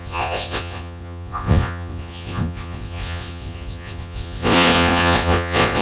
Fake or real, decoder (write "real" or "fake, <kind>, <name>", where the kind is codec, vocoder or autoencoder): fake, vocoder, Vocos